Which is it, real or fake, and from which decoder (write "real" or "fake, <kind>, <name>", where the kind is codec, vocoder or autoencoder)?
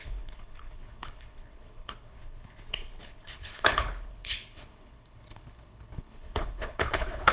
fake, codec, HILCodec